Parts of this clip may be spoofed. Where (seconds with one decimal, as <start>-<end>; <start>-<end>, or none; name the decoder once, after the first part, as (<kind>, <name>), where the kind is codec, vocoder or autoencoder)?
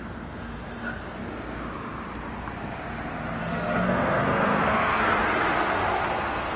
0.0-1.2 (codec, SNAC); 3.4-5.1; 6.1-6.6